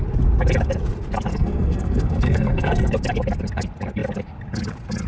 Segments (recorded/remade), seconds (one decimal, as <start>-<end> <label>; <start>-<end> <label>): 0.0-1.3 recorded; 1.3-2.9 remade; 2.9-5.1 recorded